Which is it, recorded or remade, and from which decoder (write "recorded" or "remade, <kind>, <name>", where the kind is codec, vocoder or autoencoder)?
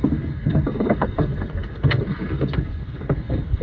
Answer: remade, codec, SNAC